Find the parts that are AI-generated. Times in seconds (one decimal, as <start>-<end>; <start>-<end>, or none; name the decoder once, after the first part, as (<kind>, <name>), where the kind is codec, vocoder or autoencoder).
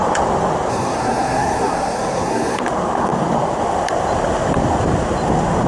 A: 0.7-2.6 (codec, SNAC)